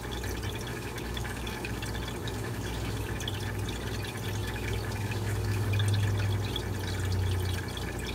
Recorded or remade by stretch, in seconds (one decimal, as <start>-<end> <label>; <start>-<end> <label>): 0.0-0.7 recorded; 0.7-1.8 remade; 1.8-2.2 recorded; 2.2-3.2 remade; 3.2-4.4 recorded; 4.4-5.7 remade; 5.7-8.1 recorded